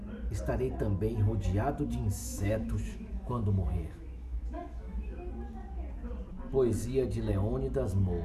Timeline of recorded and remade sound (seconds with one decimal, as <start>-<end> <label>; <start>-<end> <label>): 0.0-2.2 recorded; 2.2-5.3 remade; 5.3-8.2 recorded